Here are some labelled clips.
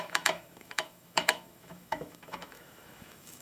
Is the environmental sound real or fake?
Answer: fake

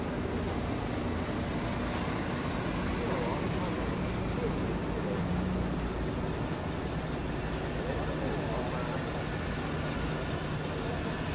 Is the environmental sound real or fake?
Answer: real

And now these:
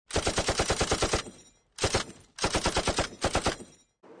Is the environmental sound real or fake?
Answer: real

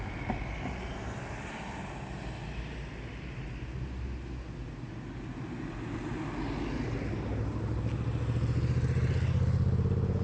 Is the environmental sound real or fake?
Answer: real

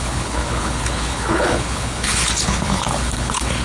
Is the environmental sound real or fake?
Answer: fake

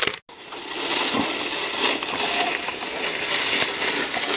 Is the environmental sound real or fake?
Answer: real